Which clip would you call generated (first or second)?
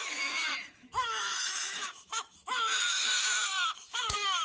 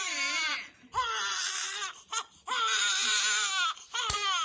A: first